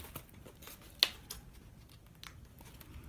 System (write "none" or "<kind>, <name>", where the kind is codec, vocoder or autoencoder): none